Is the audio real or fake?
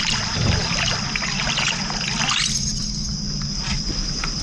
real